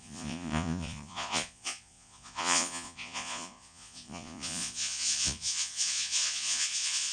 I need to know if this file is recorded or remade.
remade